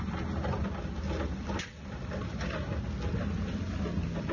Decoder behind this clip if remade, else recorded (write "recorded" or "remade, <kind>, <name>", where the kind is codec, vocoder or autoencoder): recorded